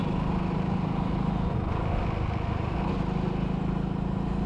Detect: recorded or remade recorded